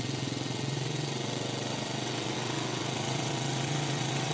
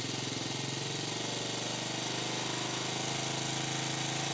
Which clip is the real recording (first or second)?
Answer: second